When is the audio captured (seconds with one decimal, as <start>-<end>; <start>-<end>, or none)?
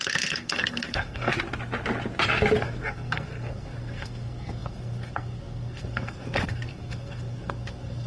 1.3-2.6